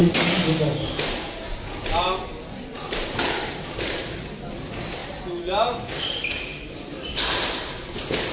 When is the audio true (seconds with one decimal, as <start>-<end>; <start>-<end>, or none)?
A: 0.0-8.3